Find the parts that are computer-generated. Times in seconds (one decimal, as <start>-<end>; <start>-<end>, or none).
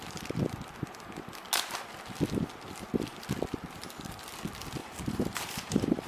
4.8-6.1